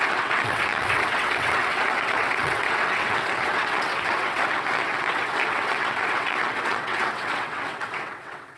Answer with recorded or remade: remade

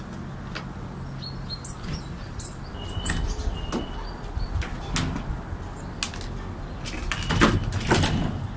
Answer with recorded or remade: recorded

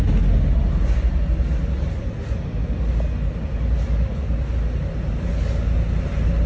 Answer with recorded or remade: recorded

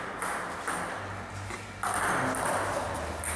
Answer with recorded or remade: recorded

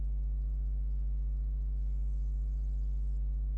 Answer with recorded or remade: recorded